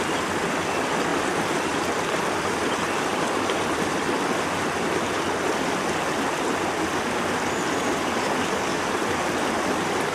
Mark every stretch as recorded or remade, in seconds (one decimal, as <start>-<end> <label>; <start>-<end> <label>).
0.0-1.1 recorded; 1.1-5.2 remade; 5.2-10.1 recorded